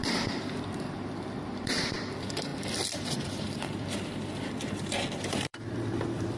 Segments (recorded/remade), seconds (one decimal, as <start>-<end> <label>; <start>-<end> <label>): 0.0-6.4 remade